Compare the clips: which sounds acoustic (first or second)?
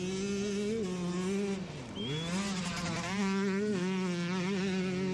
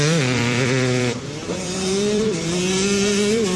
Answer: first